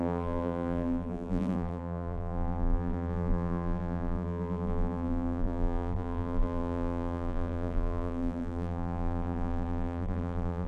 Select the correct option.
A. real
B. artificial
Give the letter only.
B